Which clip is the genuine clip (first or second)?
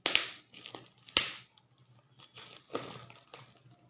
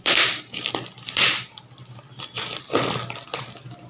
first